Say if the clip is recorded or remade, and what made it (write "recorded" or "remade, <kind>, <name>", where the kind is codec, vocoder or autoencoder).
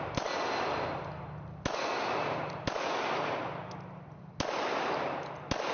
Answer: recorded